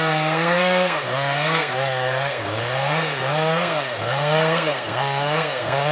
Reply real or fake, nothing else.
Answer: fake